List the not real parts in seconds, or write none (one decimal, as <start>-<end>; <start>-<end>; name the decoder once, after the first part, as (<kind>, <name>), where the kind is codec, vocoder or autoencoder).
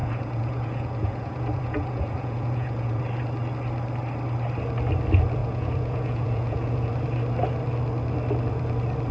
0.0-3.0 (vocoder, Vocos); 5.4-6.9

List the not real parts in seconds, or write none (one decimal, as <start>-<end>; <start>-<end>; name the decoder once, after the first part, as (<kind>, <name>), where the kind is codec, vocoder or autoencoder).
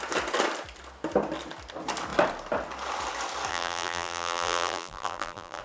3.5-5.6 (vocoder, BigVGAN v2)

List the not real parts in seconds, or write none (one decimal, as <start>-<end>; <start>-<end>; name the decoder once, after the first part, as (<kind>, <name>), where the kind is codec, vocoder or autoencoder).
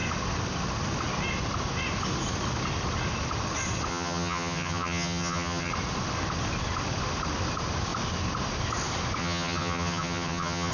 3.9-5.7 (vocoder, HiFi-GAN); 9.2-10.7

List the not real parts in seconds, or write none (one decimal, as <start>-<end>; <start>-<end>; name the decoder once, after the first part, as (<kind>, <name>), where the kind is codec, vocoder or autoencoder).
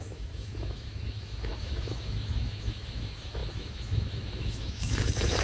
0.0-5.4 (autoencoder, DAC-VAE)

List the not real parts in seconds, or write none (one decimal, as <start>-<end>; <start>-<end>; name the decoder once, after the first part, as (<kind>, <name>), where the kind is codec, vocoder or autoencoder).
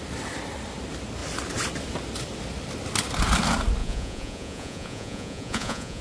3.8-6.0 (vocoder, Vocos)